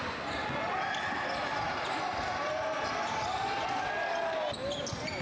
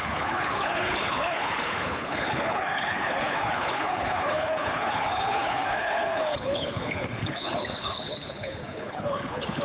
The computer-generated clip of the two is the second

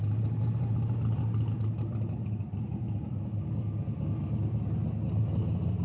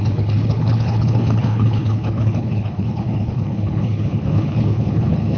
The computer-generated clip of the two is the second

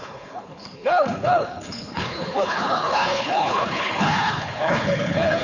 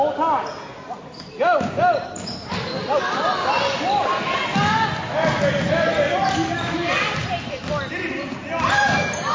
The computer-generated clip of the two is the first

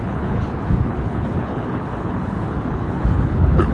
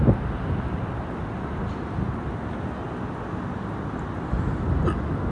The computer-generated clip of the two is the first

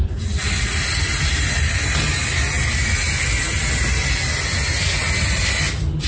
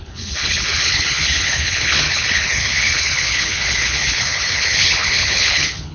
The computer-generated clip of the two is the second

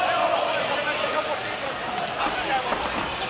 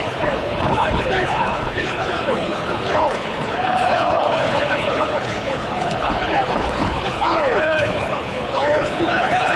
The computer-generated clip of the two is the second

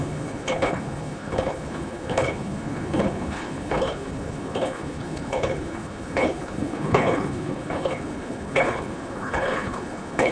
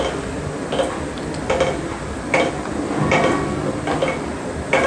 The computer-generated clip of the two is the first